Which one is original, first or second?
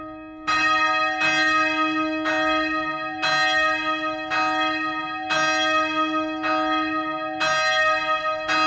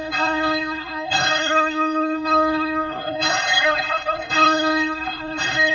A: first